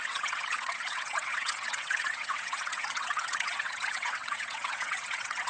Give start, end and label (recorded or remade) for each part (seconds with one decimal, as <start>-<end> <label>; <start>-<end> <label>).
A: 0.0-5.5 remade